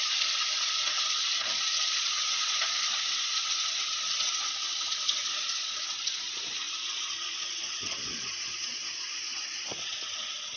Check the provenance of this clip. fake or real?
fake